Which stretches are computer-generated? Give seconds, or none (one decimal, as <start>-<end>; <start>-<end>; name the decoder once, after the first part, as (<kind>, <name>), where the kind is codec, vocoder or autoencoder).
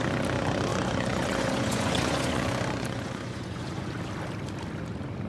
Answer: 0.7-3.9 (vocoder, Vocos)